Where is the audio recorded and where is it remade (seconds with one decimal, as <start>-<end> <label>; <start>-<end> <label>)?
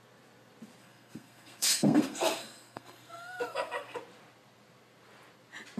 0.0-0.8 recorded; 0.8-4.0 remade; 4.0-5.8 recorded